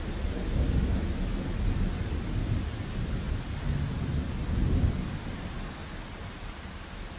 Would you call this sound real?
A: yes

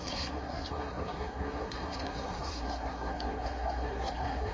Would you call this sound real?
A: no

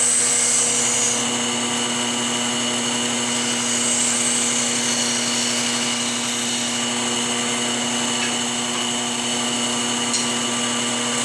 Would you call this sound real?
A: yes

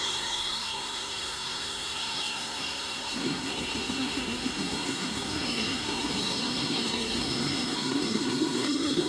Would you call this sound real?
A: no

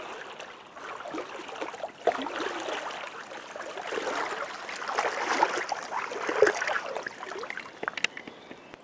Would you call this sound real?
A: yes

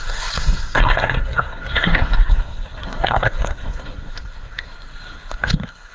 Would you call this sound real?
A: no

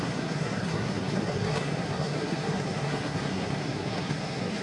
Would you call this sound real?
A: no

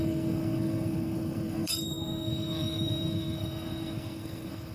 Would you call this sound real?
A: no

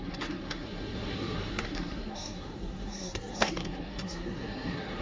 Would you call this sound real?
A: no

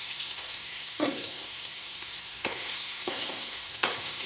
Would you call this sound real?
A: no